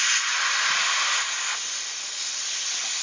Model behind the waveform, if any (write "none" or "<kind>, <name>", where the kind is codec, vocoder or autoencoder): none